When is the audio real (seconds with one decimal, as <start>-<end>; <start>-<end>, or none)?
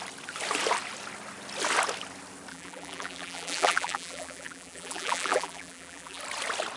0.0-2.5; 6.2-6.8